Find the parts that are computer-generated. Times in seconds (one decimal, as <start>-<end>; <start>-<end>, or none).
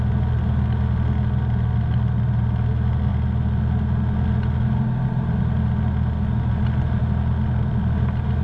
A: none